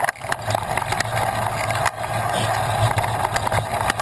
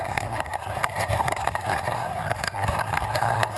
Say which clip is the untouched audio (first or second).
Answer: first